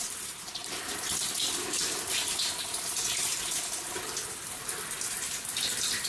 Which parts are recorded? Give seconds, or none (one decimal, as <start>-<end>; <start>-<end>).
none